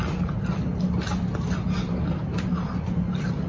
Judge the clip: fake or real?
real